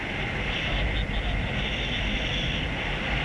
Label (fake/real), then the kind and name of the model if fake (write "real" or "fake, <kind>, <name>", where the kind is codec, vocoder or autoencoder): real